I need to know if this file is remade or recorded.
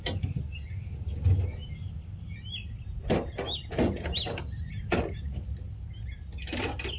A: recorded